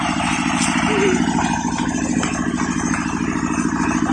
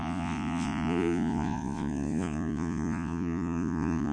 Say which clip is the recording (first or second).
first